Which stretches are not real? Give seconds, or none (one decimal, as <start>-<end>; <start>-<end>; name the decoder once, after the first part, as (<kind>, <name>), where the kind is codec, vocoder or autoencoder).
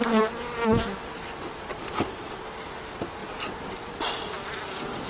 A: 1.7-2.4 (vocoder, BigVGAN v2); 3.2-4.1